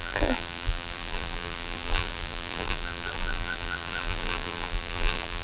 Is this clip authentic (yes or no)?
no